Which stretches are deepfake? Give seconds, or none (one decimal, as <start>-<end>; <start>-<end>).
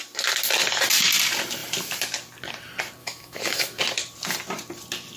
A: 3.0-3.8